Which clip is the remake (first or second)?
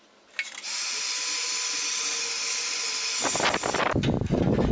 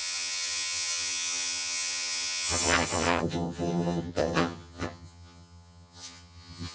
second